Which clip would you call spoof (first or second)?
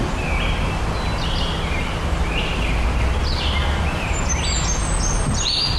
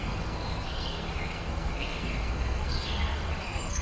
second